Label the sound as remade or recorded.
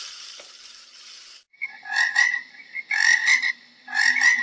remade